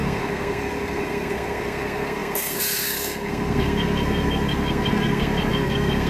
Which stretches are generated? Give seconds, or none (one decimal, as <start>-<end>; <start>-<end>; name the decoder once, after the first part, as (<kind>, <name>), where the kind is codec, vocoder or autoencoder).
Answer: 0.0-6.1 (codec, SNAC)